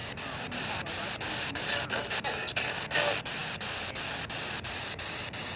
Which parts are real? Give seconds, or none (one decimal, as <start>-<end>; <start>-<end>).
0.0-5.6